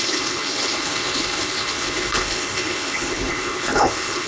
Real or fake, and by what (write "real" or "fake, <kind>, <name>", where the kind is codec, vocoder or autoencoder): fake, codec, HILCodec